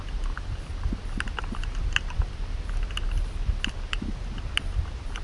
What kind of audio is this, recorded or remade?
recorded